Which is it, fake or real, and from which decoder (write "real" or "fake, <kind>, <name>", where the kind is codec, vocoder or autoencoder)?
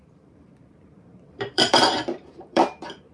fake, vocoder, BigVGAN v2